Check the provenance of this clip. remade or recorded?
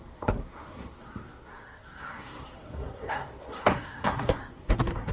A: remade